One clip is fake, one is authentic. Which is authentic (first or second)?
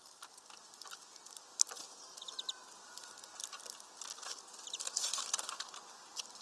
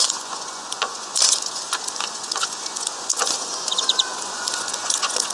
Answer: first